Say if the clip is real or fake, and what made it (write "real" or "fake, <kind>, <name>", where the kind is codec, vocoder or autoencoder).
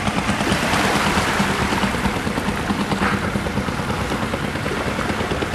real